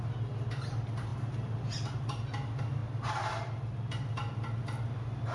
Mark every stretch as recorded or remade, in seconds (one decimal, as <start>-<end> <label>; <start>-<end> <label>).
0.0-5.3 recorded